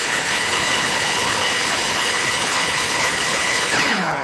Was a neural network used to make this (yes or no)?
yes